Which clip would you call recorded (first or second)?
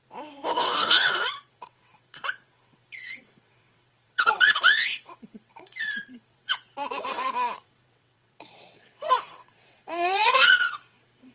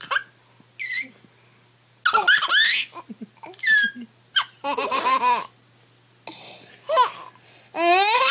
second